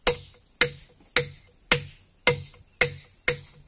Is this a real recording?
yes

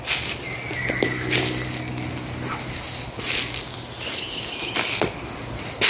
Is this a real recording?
yes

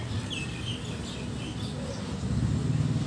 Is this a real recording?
yes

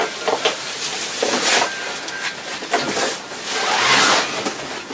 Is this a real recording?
yes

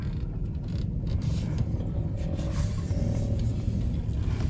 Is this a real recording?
yes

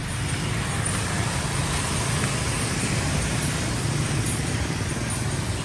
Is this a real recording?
yes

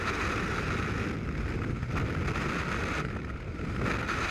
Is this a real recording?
yes